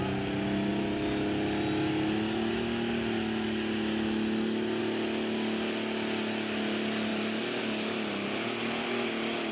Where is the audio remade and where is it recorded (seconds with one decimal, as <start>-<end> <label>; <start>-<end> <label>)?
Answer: 0.0-9.5 recorded